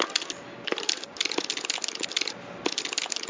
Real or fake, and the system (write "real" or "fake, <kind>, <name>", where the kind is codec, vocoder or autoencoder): real